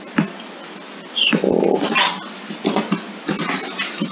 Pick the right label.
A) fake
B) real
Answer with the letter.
B